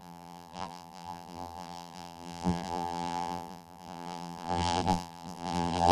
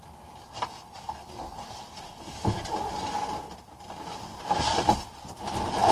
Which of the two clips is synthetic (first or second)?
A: first